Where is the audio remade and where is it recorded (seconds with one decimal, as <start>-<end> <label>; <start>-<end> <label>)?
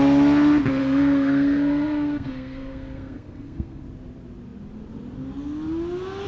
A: 0.0-0.8 recorded; 0.8-3.8 remade; 3.8-6.3 recorded